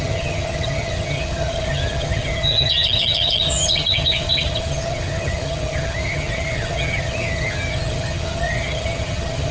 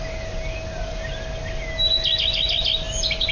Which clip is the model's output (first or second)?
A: first